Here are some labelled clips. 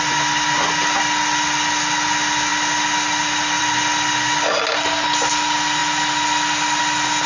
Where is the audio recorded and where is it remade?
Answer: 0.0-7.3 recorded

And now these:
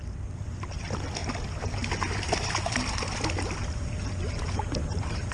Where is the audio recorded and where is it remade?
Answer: 0.0-3.6 recorded; 3.6-5.3 remade